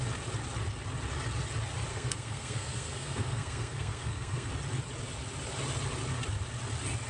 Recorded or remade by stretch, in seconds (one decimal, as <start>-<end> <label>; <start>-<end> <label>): 0.0-1.9 recorded; 1.9-4.5 remade; 4.5-7.1 recorded